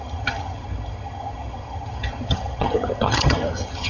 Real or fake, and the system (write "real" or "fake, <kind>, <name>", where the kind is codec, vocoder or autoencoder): fake, vocoder, HiFi-GAN